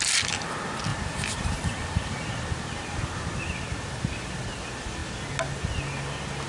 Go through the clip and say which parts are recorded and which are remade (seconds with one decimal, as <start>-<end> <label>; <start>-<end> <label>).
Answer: 0.0-0.9 recorded; 0.9-2.3 remade; 2.3-6.5 recorded